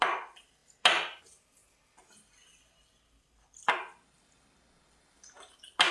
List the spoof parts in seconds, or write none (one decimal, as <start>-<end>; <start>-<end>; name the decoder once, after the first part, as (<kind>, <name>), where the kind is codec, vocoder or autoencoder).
none